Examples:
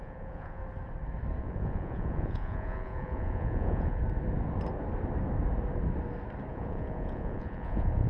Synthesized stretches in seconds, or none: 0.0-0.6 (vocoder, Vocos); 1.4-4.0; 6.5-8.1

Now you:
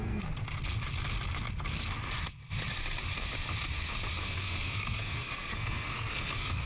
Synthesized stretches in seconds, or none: 0.0-0.4 (codec, SNAC); 4.2-6.7

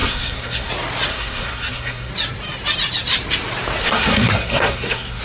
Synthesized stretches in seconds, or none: 0.0-0.7 (codec, SNAC); 1.1-2.1; 3.8-5.2

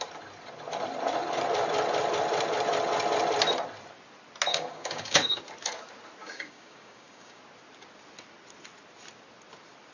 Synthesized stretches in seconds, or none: 4.5-5.4 (codec, DAC); 6.2-7.4

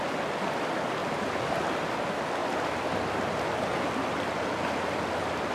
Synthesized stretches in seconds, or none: 1.0-1.7 (vocoder, BigVGAN v2); 2.4-5.5